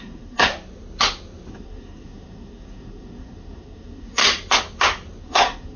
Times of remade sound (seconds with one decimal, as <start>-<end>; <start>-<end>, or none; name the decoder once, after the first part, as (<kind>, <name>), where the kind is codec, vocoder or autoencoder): 0.0-0.5 (codec, SNAC); 1.5-4.2; 5.2-5.8